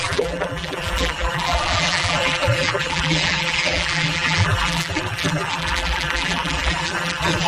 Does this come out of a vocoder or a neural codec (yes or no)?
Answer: yes